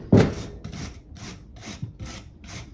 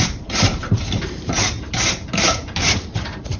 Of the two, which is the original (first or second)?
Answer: first